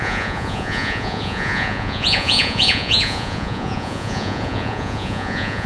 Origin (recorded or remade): remade